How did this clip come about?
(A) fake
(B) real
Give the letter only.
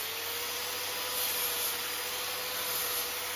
B